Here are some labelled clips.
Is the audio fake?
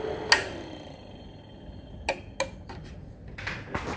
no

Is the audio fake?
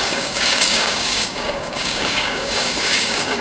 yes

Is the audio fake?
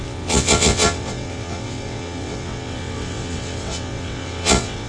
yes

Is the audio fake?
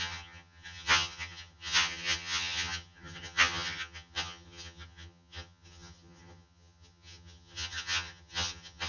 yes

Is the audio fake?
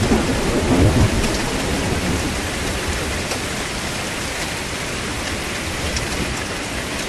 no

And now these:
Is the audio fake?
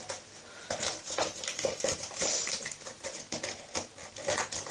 no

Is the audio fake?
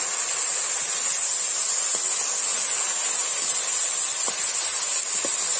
no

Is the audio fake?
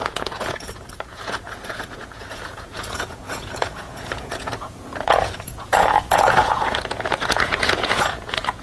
yes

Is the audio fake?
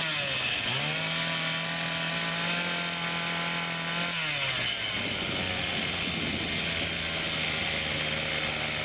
no